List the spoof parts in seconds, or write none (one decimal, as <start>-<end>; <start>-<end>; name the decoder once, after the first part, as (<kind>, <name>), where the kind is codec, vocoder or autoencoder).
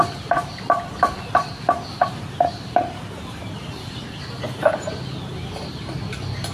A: 2.0-3.4 (vocoder, BigVGAN v2); 5.3-5.9